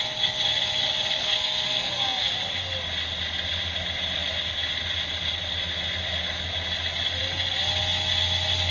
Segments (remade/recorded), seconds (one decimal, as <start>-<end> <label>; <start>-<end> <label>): 0.0-1.2 recorded; 1.2-2.3 remade; 2.3-8.7 recorded